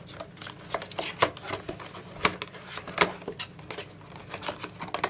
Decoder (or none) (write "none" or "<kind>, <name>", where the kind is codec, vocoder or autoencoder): none